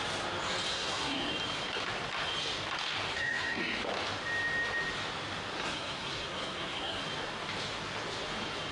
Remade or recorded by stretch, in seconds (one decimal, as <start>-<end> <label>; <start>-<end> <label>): 0.0-0.7 recorded; 0.7-1.3 remade; 1.3-3.1 recorded; 3.1-3.6 remade; 3.6-5.6 recorded; 5.6-7.0 remade; 7.0-8.7 recorded

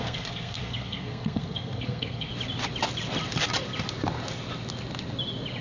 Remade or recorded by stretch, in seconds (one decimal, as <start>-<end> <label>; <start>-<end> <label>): 0.0-2.3 remade; 2.3-5.6 recorded